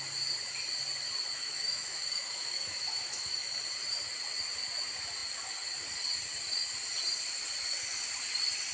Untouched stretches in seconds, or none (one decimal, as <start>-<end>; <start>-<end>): 0.0-1.3; 3.6-8.7